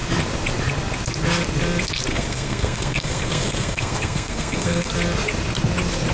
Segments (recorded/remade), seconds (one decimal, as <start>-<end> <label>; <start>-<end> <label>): 0.0-2.1 recorded; 2.1-4.9 remade; 4.9-6.1 recorded